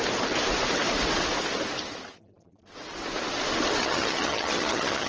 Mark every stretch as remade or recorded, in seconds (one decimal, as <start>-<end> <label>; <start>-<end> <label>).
0.0-3.8 recorded; 3.8-5.1 remade